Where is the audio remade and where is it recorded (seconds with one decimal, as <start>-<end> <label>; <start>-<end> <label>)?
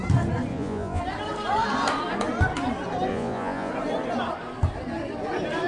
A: 0.0-0.5 recorded; 0.5-1.0 remade; 1.0-3.1 recorded; 3.1-3.7 remade; 3.7-5.7 recorded